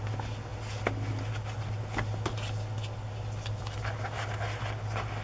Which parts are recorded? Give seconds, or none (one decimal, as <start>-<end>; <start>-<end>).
0.0-5.2